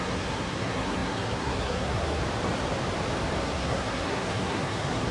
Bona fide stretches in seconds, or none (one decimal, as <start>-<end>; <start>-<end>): 2.2-3.4